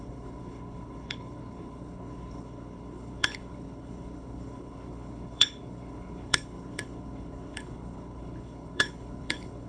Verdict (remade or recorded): remade